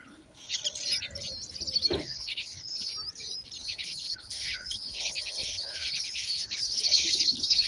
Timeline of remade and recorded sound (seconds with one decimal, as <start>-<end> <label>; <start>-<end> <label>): 0.0-0.6 remade; 0.6-2.0 recorded; 2.0-2.9 remade; 2.9-3.6 recorded; 3.6-7.7 remade